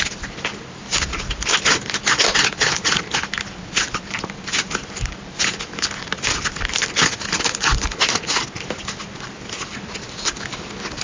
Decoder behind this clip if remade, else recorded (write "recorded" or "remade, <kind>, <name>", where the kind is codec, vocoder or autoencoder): recorded